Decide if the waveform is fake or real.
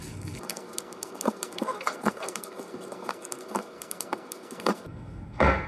fake